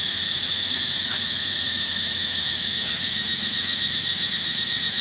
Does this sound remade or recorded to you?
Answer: remade